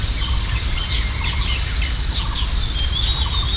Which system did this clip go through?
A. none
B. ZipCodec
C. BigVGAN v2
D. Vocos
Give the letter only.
A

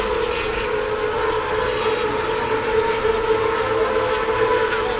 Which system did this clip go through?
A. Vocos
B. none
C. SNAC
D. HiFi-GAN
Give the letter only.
B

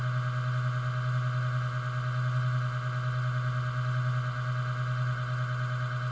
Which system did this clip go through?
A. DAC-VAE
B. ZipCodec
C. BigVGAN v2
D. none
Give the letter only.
D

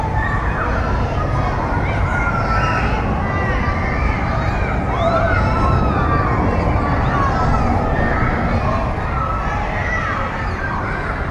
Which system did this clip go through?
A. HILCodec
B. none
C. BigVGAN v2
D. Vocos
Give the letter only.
B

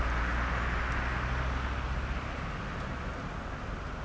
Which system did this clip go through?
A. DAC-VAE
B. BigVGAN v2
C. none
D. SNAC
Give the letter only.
C